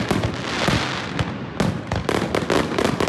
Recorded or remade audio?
recorded